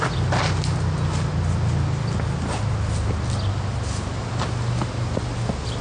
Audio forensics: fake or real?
real